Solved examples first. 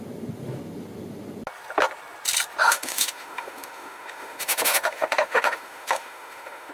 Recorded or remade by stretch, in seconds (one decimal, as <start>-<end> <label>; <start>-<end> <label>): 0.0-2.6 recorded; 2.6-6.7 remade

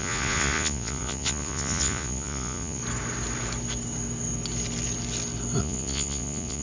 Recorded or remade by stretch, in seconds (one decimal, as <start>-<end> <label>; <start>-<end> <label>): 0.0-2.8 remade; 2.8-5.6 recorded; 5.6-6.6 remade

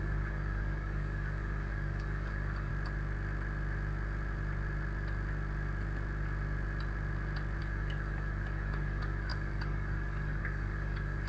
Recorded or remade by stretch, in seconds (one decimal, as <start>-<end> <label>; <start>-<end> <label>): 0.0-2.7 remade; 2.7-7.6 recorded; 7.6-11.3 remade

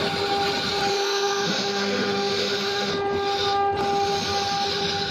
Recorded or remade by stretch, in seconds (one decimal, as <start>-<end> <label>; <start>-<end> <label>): 0.0-0.9 recorded; 0.9-2.9 remade; 2.9-5.1 recorded

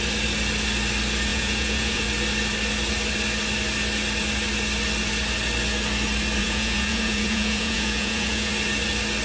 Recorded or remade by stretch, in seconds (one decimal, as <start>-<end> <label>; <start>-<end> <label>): 0.0-1.3 recorded; 1.3-2.0 remade; 2.0-6.4 recorded; 6.4-8.5 remade; 8.5-9.2 recorded

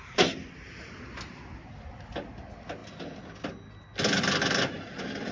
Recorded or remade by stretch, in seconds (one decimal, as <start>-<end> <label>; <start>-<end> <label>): 0.0-5.3 recorded